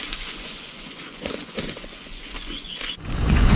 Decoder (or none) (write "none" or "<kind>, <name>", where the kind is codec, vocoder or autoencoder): vocoder, Vocos